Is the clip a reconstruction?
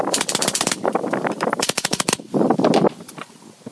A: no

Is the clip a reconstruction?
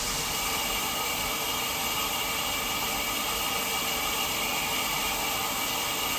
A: no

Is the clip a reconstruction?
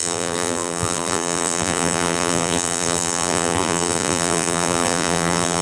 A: yes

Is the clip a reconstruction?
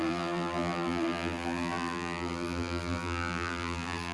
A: yes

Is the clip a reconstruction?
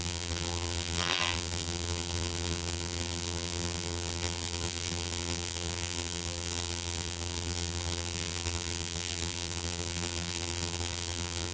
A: yes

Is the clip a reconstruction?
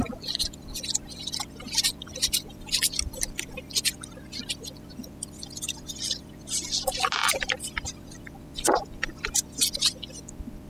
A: yes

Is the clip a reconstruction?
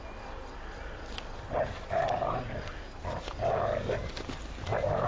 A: no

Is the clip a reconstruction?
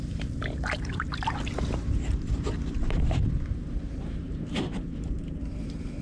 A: yes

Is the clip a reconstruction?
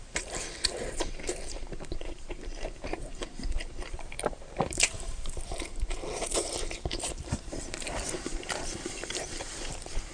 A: yes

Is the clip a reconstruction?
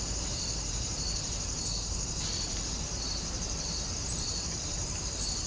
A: yes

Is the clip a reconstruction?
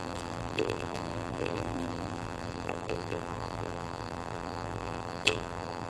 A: yes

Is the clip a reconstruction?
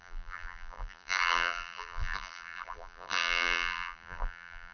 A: yes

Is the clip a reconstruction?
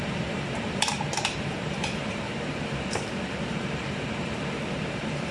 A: yes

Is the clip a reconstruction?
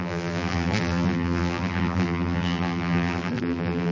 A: yes